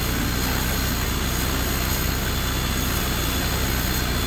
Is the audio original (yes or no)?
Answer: yes